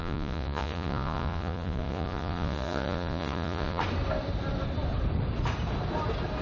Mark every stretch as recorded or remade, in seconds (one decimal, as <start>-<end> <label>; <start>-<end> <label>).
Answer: 0.0-3.8 remade; 3.8-6.4 recorded

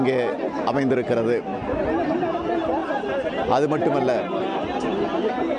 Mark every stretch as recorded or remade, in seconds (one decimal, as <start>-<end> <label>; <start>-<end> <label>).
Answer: 0.0-5.6 recorded

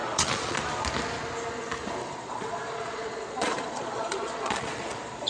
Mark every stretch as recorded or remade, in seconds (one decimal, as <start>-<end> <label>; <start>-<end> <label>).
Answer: 0.0-0.6 remade; 0.6-2.0 recorded; 2.0-5.3 remade